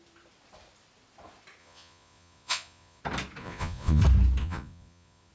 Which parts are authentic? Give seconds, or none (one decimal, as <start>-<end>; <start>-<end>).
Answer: 0.0-1.6; 3.0-3.4; 4.0-4.4